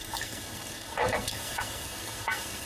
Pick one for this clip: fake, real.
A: fake